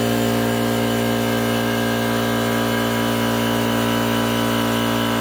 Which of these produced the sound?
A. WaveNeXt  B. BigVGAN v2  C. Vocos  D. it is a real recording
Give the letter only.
D